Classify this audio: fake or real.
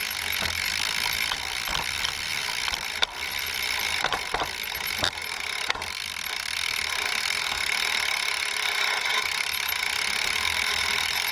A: real